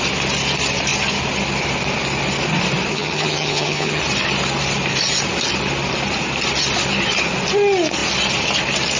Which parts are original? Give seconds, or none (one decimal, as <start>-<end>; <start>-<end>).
0.0-2.9; 4.0-9.0